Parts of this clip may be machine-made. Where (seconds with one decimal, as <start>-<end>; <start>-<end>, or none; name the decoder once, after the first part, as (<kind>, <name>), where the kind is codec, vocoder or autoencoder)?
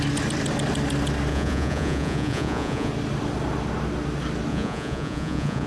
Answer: 1.3-2.9 (vocoder, Vocos); 4.5-5.7